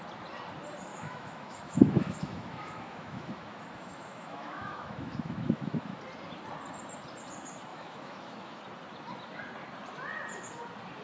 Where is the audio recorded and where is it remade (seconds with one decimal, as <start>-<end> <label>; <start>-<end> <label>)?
0.0-0.9 recorded; 0.9-6.0 remade; 6.0-7.7 recorded; 7.7-8.6 remade; 8.6-11.0 recorded